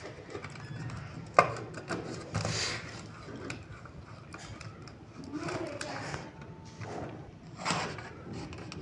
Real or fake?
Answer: real